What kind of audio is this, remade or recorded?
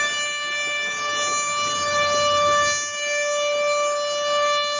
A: recorded